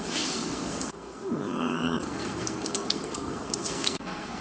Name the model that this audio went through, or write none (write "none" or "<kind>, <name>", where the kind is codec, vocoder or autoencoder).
codec, SNAC